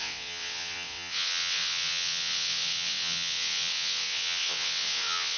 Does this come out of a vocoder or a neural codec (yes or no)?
yes